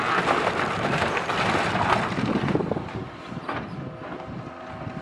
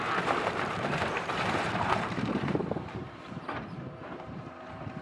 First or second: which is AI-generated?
second